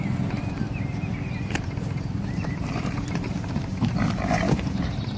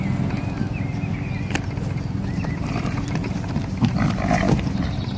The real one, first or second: second